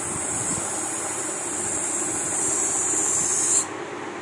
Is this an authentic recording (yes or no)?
yes